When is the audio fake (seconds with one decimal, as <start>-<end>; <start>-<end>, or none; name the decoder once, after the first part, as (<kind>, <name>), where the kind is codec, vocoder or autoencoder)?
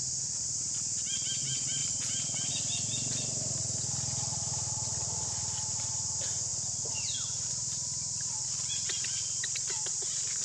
1.8-2.5 (vocoder, BigVGAN v2); 6.5-7.5